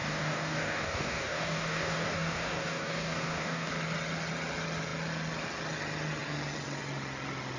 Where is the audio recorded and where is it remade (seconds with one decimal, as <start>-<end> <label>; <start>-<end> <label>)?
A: 0.0-3.7 remade; 3.7-7.6 recorded